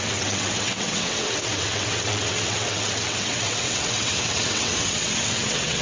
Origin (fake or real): fake